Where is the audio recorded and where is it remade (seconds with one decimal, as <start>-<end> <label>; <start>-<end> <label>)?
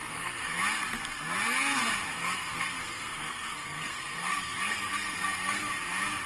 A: 0.0-0.6 remade; 0.6-2.1 recorded; 2.1-5.7 remade; 5.7-6.3 recorded